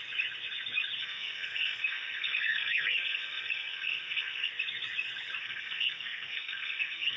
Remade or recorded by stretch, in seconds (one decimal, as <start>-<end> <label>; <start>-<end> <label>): 0.0-1.0 recorded; 1.0-4.5 remade; 4.5-5.4 recorded; 5.4-7.2 remade